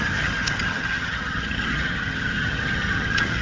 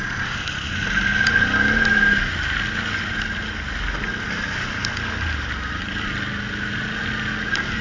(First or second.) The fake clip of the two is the first